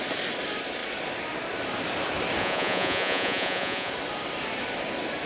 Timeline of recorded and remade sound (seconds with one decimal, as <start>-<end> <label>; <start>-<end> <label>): 0.0-2.4 recorded; 2.4-3.9 remade; 3.9-5.3 recorded